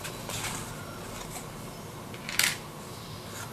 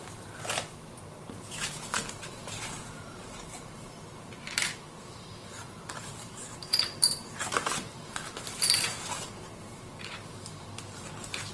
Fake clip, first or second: second